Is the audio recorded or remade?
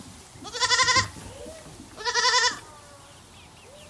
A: recorded